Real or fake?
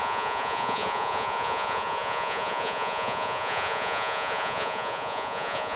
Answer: fake